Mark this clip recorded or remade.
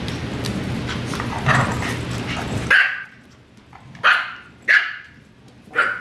recorded